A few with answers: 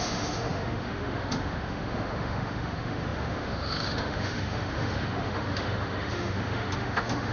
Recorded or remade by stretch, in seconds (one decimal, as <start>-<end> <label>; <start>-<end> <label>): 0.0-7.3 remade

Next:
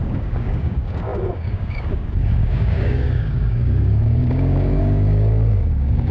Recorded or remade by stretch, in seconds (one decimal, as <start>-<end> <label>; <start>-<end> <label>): 0.0-6.1 remade

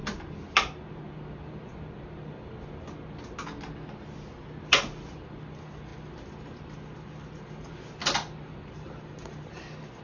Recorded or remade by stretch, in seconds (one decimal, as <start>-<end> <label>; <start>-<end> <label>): 0.0-10.0 recorded